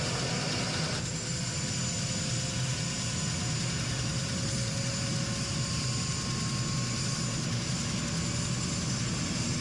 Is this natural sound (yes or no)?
yes